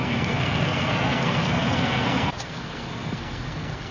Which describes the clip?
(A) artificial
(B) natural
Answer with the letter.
A